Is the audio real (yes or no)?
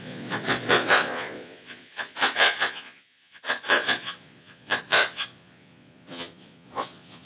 no